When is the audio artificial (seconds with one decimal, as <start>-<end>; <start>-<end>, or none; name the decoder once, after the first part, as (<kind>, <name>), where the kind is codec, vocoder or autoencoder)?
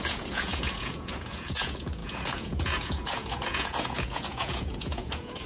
0.0-5.5 (vocoder, Vocos)